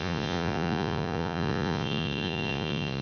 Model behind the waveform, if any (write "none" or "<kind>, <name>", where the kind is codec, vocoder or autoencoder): vocoder, Vocos